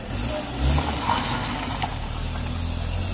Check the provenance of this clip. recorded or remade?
recorded